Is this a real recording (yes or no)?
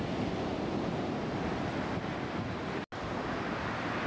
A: yes